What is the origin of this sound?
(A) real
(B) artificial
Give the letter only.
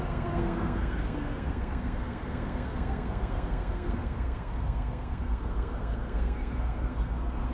B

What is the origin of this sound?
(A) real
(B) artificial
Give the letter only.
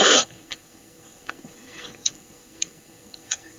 B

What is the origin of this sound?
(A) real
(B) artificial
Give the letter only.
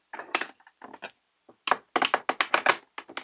A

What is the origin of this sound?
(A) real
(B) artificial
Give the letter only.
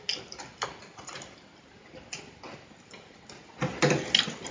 A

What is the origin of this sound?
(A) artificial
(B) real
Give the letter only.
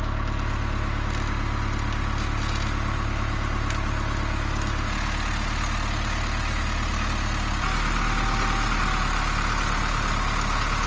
B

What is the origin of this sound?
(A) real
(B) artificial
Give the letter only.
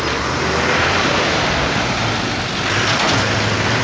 B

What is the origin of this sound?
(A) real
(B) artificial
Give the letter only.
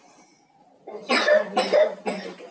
A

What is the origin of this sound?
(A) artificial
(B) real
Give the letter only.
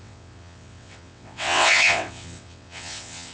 A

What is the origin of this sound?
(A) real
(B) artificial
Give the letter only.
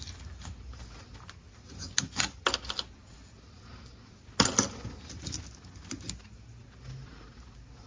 A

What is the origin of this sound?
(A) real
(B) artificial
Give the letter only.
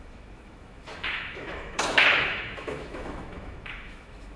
B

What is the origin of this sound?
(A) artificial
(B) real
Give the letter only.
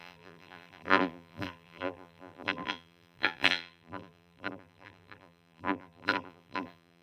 A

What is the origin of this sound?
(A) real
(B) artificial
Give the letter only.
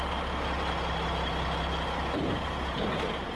A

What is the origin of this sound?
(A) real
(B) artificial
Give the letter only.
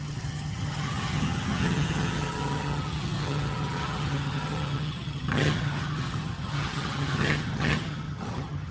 B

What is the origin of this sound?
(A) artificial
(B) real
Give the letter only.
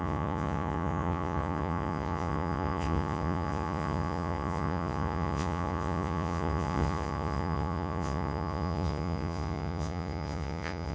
A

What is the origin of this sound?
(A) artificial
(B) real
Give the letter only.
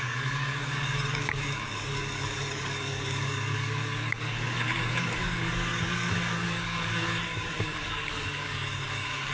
A